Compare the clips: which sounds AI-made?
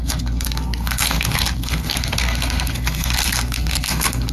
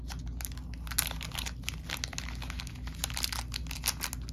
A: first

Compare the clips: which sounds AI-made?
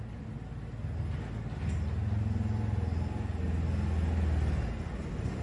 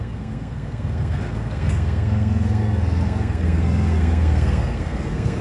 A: second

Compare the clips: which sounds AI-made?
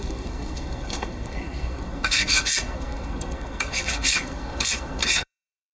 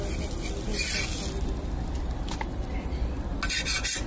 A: first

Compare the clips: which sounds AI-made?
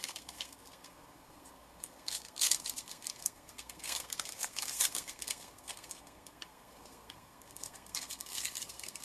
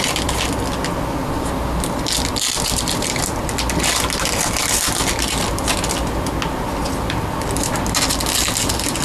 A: first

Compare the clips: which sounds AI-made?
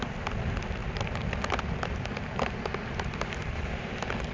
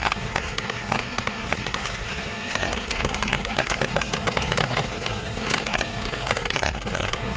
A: second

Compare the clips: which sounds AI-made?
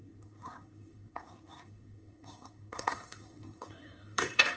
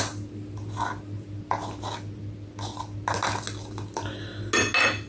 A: first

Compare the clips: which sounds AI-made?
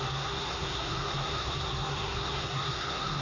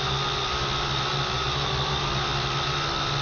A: first